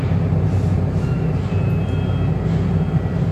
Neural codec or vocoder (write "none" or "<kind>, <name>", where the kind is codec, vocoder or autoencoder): none